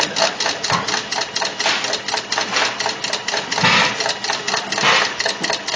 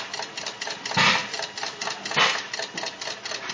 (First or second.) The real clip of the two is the first